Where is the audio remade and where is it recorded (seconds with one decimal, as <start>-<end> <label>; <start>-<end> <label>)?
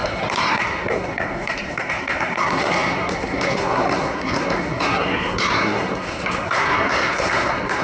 0.0-7.8 remade